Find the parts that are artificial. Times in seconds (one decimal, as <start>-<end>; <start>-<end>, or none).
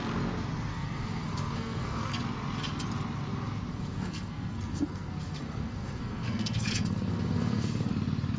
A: 0.7-2.2; 3.7-7.9